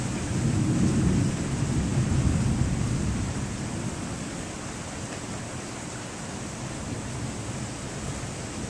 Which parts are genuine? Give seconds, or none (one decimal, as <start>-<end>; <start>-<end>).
0.0-8.7